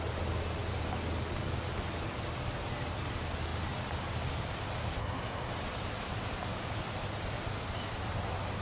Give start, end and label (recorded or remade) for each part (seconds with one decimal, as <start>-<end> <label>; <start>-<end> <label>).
0.0-5.0 recorded; 5.0-5.5 remade; 5.5-8.6 recorded